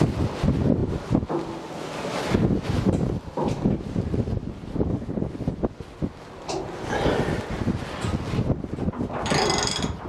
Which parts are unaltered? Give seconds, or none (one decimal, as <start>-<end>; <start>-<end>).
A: 0.0-10.1